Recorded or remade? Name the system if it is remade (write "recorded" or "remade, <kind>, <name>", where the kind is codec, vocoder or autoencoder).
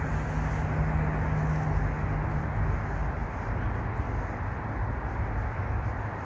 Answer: recorded